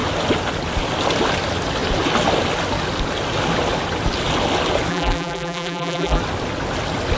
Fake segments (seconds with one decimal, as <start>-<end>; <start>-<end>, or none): 4.9-6.2